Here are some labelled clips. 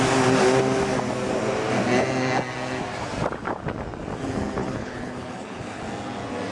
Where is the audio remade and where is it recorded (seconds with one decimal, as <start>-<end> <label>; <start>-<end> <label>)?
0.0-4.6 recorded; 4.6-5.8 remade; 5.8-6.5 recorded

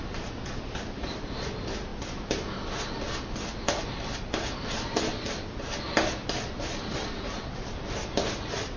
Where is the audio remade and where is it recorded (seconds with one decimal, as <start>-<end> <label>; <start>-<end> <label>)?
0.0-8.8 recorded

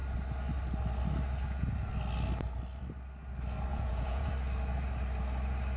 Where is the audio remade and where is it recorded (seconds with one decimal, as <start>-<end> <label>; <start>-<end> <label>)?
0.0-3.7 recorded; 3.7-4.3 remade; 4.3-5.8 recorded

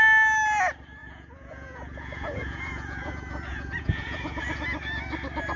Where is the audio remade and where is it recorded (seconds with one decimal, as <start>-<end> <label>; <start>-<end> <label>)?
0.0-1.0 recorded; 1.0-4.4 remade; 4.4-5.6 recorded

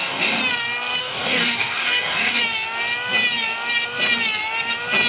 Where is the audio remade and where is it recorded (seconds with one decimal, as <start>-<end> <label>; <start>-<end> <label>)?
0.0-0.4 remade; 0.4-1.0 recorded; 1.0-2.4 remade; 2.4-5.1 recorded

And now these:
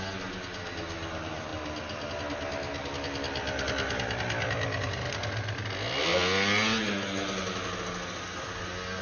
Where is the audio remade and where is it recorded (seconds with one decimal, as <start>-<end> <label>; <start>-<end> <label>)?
0.0-9.0 recorded

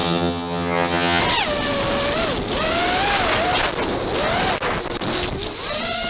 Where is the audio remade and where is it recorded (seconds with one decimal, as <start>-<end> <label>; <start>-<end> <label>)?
0.0-1.2 remade; 1.2-6.1 recorded

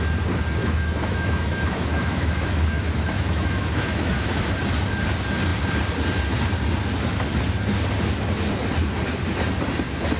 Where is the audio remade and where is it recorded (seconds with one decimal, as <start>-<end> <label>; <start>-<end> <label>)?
0.0-0.6 recorded; 0.6-4.4 remade; 4.4-10.2 recorded